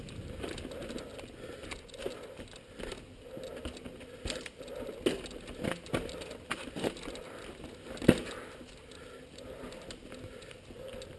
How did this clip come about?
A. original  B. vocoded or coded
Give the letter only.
A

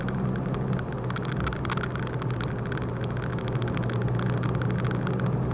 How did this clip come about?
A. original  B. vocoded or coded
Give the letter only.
A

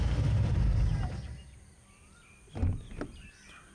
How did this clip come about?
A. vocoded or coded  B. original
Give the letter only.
B